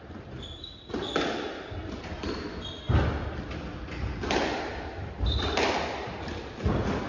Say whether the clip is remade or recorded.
recorded